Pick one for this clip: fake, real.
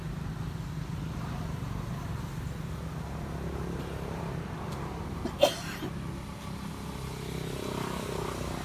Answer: real